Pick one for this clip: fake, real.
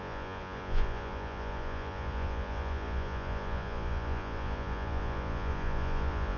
fake